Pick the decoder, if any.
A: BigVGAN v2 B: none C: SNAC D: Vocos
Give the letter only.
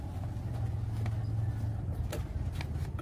B